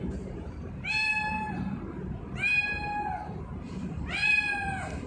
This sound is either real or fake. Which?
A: fake